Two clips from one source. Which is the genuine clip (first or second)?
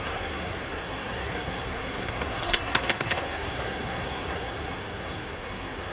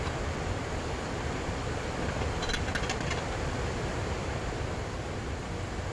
second